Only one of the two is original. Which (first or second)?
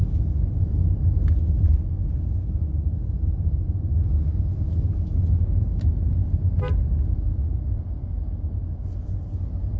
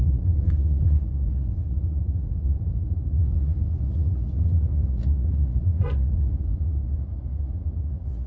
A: first